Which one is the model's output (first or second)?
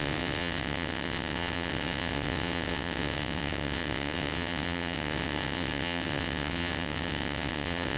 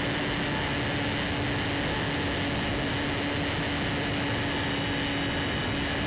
first